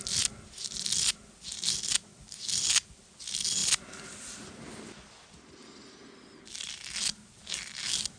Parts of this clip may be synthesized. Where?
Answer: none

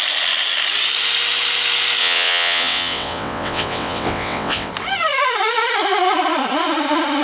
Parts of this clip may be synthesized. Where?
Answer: 2.0-4.7 (vocoder, WaveNeXt)

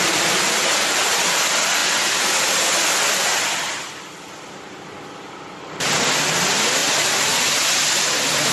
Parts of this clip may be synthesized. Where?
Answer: none

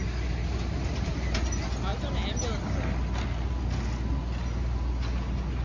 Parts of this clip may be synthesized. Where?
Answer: none